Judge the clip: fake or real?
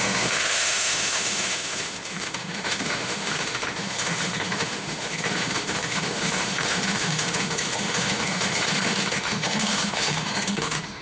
fake